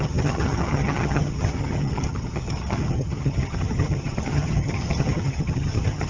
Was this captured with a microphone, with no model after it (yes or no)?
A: no